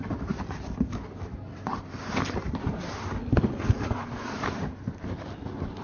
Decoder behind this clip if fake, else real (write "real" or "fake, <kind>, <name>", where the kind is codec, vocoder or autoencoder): real